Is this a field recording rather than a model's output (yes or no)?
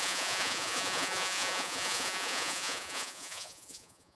no